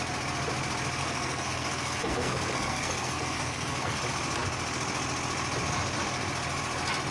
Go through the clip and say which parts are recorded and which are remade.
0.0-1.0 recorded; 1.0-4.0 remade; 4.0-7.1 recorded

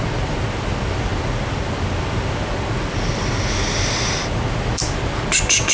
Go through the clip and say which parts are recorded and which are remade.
0.0-5.7 recorded

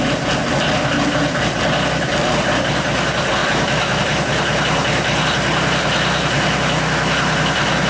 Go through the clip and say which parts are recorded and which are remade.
0.0-3.4 recorded; 3.4-4.0 remade; 4.0-7.9 recorded

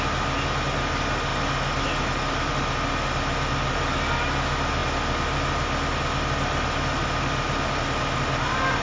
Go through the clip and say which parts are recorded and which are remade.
0.0-8.8 recorded

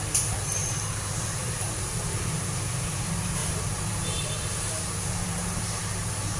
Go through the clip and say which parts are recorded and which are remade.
0.0-0.6 recorded; 0.6-2.6 remade; 2.6-3.4 recorded; 3.4-5.8 remade; 5.8-6.4 recorded

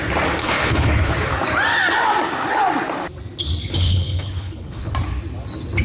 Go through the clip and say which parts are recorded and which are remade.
0.0-0.4 recorded; 0.4-1.1 remade; 1.1-3.8 recorded; 3.8-4.9 remade; 4.9-5.8 recorded